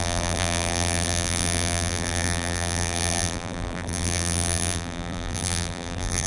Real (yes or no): no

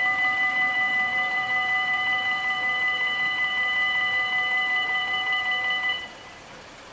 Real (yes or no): no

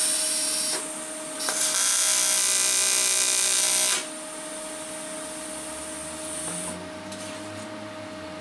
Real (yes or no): yes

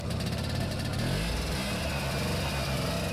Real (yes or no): yes